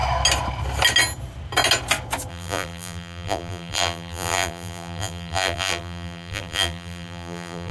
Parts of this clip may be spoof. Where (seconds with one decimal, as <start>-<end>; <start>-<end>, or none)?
2.3-7.7